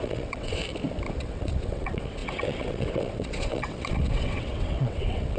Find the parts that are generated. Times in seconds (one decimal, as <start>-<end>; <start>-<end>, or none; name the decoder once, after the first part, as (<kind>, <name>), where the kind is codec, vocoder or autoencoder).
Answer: 0.0-0.6 (vocoder, WaveNeXt); 1.2-5.4